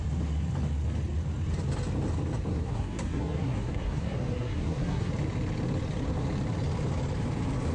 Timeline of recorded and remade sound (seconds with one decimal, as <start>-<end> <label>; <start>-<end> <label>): 0.0-2.5 recorded; 2.5-5.1 remade; 5.1-7.7 recorded